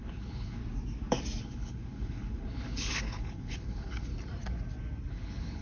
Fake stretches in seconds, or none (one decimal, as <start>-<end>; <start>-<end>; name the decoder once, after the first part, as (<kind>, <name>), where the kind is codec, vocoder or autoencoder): 0.0-0.6 (codec, HILCodec); 1.4-4.1; 5.1-5.6